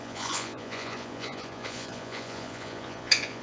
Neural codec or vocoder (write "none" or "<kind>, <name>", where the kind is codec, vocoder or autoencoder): vocoder, Vocos